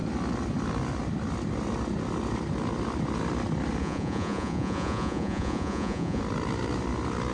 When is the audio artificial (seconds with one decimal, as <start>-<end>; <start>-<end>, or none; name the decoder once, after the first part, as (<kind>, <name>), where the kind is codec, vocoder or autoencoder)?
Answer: 3.8-6.2 (vocoder, Vocos)